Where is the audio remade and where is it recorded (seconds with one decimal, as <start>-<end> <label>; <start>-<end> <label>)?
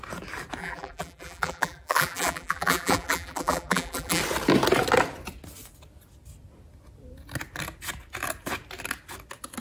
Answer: 0.0-0.6 recorded; 0.6-4.2 remade; 4.2-9.6 recorded